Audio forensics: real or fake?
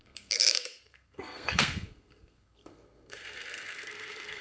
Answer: fake